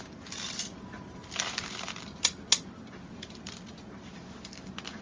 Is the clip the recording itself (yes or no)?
no